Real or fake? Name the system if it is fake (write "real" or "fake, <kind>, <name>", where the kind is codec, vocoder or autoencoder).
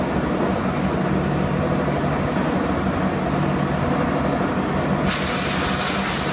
real